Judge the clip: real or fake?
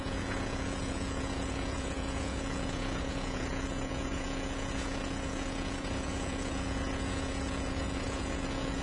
fake